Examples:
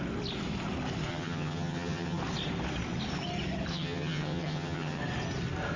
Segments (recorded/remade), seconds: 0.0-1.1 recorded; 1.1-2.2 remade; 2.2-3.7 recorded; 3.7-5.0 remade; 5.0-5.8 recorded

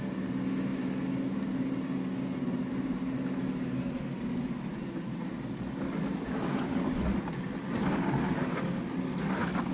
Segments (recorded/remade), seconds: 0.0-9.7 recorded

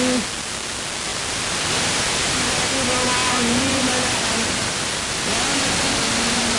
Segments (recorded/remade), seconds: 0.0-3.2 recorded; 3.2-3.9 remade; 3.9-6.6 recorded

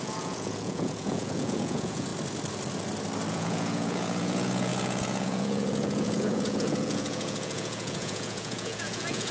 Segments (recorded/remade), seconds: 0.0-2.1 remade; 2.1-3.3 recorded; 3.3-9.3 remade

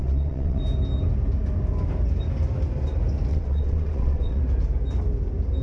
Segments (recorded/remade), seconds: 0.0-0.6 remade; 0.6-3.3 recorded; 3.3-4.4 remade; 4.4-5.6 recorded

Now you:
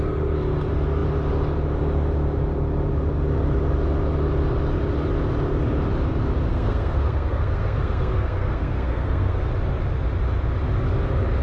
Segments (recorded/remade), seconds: 0.0-6.5 recorded; 6.5-9.5 remade; 9.5-11.4 recorded